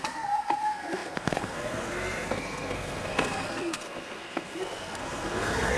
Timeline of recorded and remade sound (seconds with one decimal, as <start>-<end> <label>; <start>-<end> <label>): 0.0-5.8 remade